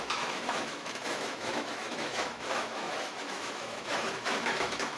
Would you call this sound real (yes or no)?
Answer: no